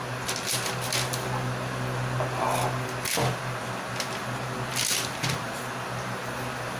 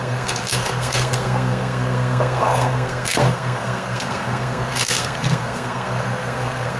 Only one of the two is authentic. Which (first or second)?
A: first